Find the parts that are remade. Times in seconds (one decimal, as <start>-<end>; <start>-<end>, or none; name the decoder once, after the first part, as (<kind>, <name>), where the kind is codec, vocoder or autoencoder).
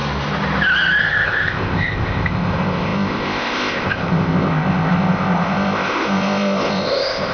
1.0-7.3 (codec, ZipCodec)